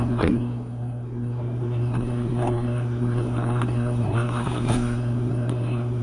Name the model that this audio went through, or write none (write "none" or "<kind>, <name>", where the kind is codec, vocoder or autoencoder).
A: codec, SNAC